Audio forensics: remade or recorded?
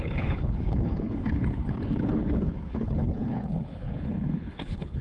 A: remade